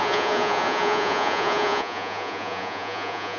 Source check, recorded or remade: remade